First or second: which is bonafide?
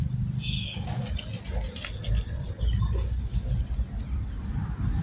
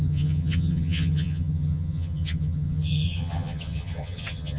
first